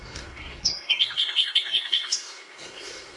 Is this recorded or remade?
remade